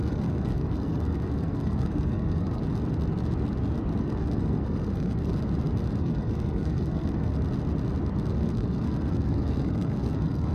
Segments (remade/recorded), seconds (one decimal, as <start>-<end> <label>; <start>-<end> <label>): 0.0-2.6 remade; 2.6-4.0 recorded; 4.0-5.3 remade; 5.3-6.0 recorded; 6.0-7.3 remade; 7.3-8.3 recorded; 8.3-10.5 remade

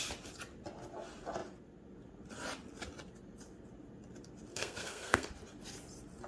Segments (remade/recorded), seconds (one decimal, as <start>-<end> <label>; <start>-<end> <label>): 0.0-4.5 recorded; 4.5-5.3 remade; 5.3-6.3 recorded

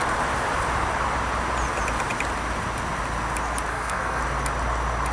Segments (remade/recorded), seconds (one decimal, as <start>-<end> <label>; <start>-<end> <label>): 0.0-3.7 recorded; 3.7-4.2 remade; 4.2-5.1 recorded

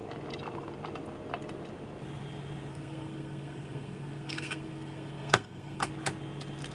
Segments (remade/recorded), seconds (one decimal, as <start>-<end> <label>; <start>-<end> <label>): 0.0-2.7 recorded; 2.7-5.9 remade; 5.9-6.7 recorded